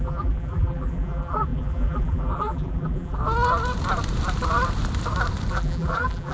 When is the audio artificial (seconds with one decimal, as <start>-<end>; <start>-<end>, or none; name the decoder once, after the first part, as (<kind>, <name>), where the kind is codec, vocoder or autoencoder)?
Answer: 0.0-3.2 (vocoder, BigVGAN v2); 5.5-6.3